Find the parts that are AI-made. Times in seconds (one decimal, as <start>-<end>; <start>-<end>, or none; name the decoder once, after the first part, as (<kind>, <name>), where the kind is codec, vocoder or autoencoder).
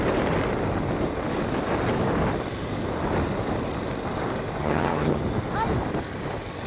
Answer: 4.6-5.2 (vocoder, HiFi-GAN)